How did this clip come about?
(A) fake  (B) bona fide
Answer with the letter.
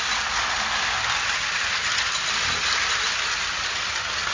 B